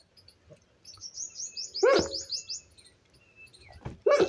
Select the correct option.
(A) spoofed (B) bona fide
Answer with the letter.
B